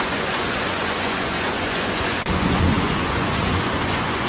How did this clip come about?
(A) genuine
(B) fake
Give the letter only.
B